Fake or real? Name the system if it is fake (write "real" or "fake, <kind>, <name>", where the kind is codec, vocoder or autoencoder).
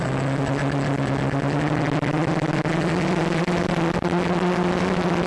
real